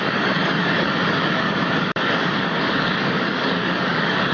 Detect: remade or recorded remade